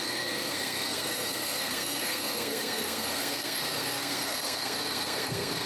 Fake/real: fake